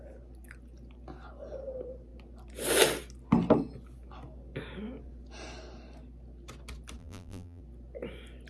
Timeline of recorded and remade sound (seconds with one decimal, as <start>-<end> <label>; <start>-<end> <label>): 0.0-7.0 recorded; 7.0-7.6 remade; 7.6-8.5 recorded